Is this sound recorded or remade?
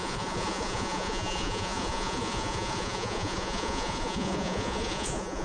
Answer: remade